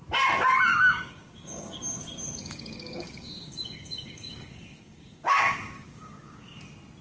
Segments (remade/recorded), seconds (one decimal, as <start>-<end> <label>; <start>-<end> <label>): 0.0-0.7 recorded; 0.7-1.8 remade; 1.8-2.4 recorded; 2.4-6.6 remade; 6.6-7.0 recorded